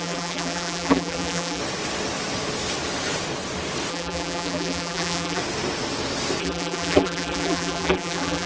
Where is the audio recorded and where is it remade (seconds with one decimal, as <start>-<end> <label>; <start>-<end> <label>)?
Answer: 0.0-1.6 remade; 1.6-3.9 recorded; 3.9-5.4 remade; 5.4-6.4 recorded; 6.4-8.5 remade